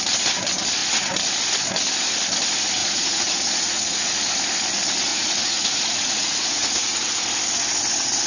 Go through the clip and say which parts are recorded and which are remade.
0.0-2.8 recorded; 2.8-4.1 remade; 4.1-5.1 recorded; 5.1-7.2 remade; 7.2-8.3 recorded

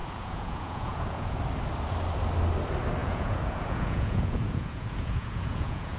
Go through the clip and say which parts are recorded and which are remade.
0.0-1.4 remade; 1.4-3.0 recorded; 3.0-6.0 remade

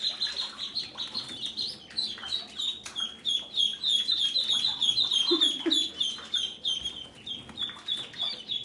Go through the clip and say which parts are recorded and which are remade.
0.0-8.6 recorded

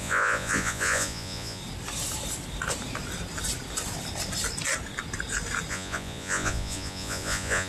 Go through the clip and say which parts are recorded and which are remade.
0.0-1.6 remade; 1.6-5.7 recorded; 5.7-7.7 remade